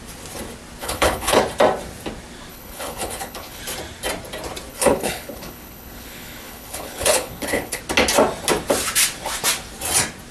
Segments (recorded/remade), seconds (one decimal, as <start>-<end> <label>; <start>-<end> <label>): 0.0-0.8 recorded; 0.8-1.4 remade; 1.4-2.5 recorded; 2.5-3.6 remade; 3.6-4.7 recorded; 4.7-7.8 remade; 7.8-10.3 recorded